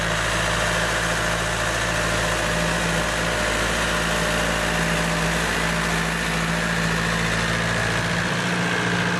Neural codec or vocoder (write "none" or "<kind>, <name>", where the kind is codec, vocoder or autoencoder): none